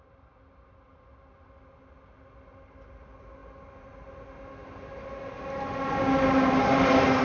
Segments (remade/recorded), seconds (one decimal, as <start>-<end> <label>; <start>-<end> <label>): 0.0-7.2 recorded